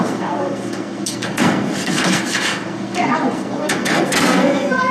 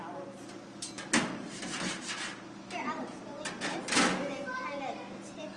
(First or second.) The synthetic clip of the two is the first